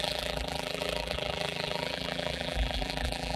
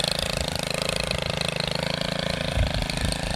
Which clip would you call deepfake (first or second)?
first